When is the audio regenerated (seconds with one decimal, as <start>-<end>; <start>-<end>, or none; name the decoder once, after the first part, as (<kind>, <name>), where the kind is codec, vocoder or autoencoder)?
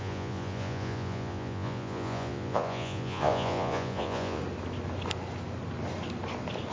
0.0-4.4 (vocoder, Vocos)